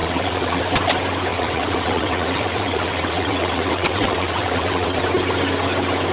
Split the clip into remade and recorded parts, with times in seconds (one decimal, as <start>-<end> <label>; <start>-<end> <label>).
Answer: 0.0-0.6 remade; 0.6-1.3 recorded; 1.3-5.0 remade; 5.0-6.1 recorded